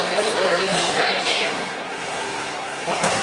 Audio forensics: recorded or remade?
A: remade